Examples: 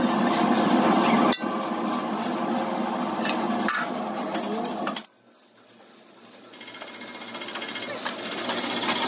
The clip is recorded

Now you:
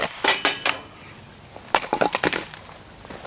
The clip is recorded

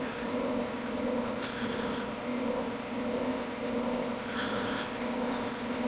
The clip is remade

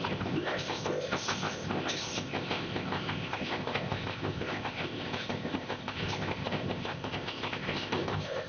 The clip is remade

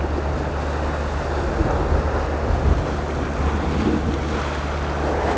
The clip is recorded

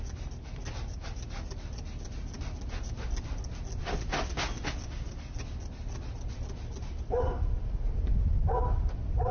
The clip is recorded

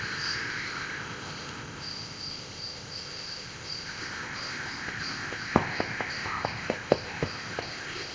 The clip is remade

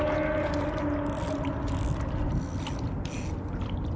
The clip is recorded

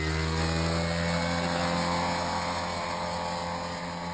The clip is recorded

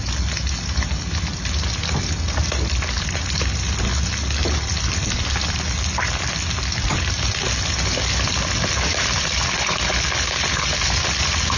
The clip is recorded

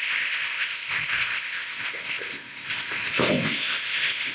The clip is remade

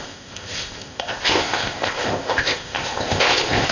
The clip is remade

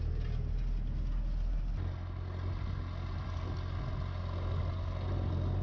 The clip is recorded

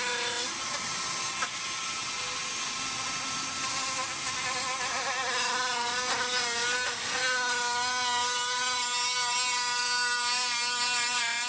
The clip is recorded